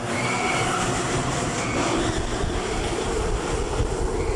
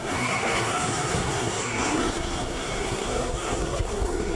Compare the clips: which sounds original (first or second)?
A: first